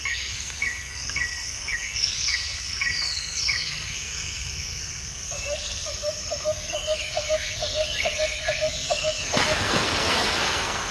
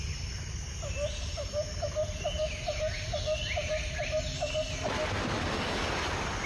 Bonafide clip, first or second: second